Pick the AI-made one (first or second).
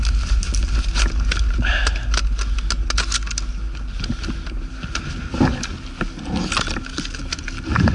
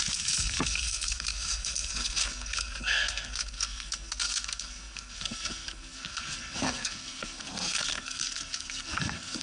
second